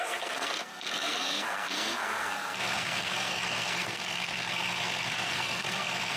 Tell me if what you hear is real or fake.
fake